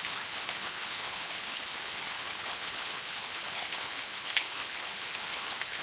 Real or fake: fake